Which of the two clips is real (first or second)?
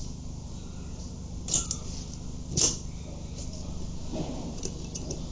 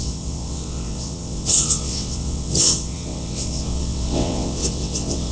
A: first